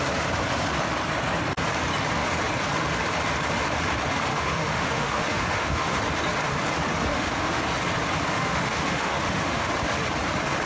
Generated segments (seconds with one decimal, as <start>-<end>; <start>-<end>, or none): 4.3-6.0; 7.1-7.7; 8.3-9.7